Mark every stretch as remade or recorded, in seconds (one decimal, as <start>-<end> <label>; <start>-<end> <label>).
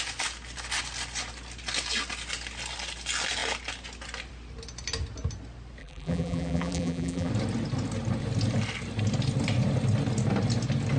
0.0-5.8 recorded; 5.8-7.3 remade; 7.3-11.0 recorded